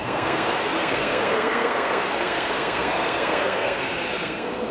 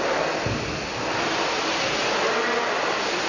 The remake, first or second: first